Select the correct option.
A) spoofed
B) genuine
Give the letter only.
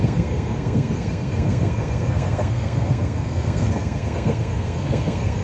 A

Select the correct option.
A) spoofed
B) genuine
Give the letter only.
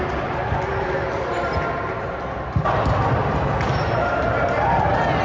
B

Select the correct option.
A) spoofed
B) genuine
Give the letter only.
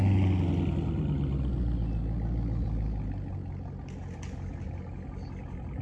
B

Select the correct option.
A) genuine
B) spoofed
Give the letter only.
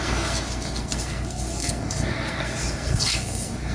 B